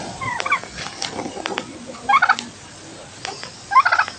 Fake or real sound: real